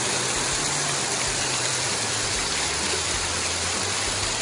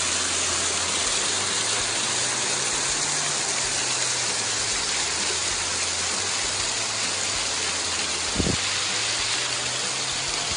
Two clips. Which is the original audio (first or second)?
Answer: second